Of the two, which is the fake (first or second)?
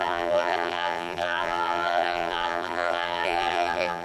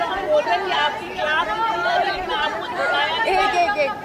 first